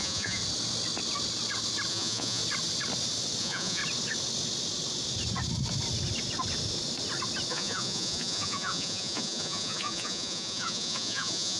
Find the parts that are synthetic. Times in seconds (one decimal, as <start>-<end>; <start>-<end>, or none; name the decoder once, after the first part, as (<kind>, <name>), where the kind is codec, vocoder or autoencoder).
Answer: 0.0-0.4 (vocoder, Vocos); 1.9-2.4; 3.4-3.8; 7.5-11.6